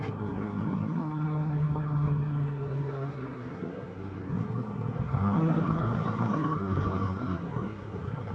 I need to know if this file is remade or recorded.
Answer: remade